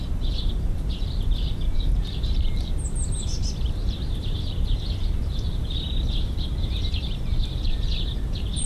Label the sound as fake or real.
fake